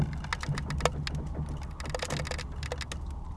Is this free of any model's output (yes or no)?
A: yes